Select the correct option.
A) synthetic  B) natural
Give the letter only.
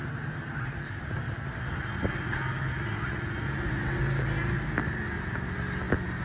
B